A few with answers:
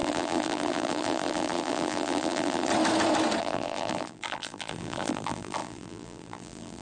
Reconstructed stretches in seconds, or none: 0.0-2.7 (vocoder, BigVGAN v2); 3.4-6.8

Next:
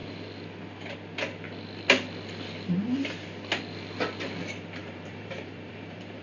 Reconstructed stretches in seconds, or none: 4.8-6.2 (vocoder, BigVGAN v2)